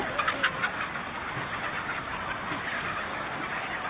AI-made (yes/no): no